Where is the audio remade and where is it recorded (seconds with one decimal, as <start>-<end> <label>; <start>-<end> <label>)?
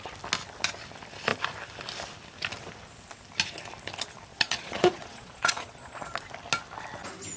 0.0-4.3 recorded; 4.3-6.3 remade; 6.3-7.4 recorded